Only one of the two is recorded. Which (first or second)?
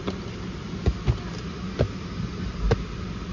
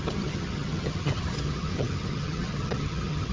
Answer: first